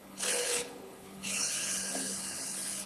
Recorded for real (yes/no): no